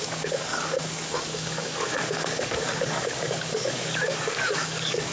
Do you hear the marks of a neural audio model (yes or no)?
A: yes